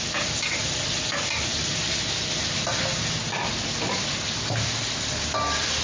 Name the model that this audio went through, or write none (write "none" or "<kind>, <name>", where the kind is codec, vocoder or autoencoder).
none